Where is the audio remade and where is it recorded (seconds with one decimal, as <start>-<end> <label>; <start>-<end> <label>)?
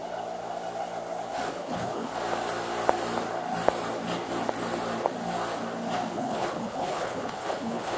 0.0-1.5 recorded; 1.5-2.1 remade; 2.1-6.1 recorded; 6.1-8.0 remade